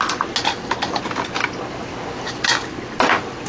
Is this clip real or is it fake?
real